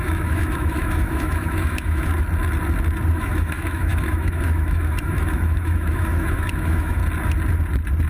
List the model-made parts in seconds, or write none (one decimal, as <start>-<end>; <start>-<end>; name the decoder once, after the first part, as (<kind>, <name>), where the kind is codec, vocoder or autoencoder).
0.0-2.1 (autoencoder, DAC-VAE); 3.1-7.0